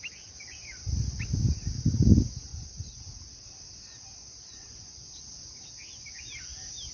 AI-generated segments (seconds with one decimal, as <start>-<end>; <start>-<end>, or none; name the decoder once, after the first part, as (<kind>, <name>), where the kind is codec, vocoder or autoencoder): 2.5-3.0 (vocoder, Vocos); 4.2-5.1